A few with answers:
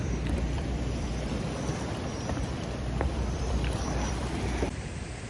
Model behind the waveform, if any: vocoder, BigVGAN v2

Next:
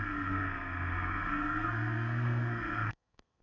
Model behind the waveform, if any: codec, SNAC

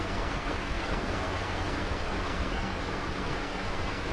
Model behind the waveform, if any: codec, SNAC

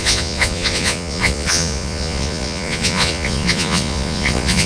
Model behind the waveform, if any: vocoder, Vocos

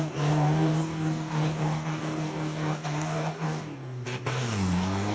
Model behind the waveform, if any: codec, DAC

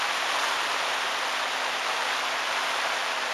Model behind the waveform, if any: none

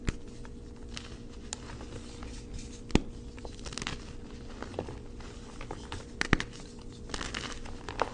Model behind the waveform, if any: none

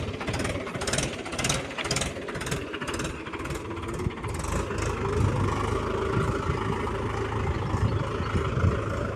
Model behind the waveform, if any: none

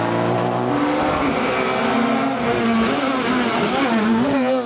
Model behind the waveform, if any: none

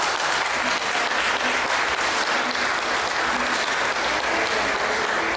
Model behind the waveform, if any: none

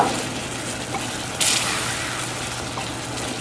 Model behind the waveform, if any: none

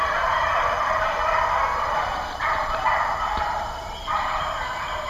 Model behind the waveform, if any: vocoder, BigVGAN v2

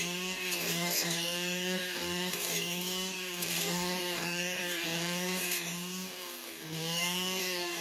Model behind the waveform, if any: codec, DAC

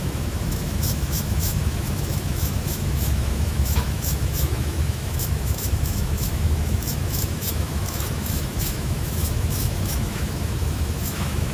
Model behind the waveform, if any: autoencoder, DAC-VAE